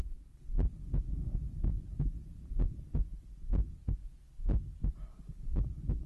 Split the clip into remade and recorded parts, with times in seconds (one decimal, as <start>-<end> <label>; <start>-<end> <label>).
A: 0.0-5.1 recorded; 5.1-5.6 remade; 5.6-6.1 recorded